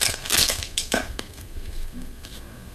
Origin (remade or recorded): remade